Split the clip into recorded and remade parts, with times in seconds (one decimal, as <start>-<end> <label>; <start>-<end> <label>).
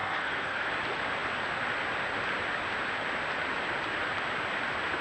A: 0.0-0.7 remade; 0.7-5.0 recorded